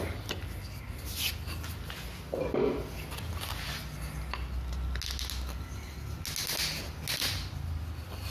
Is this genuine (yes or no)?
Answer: yes